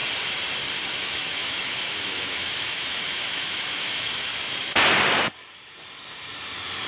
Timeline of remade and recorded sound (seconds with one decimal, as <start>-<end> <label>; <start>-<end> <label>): 0.0-1.0 recorded; 1.0-4.3 remade; 4.3-6.9 recorded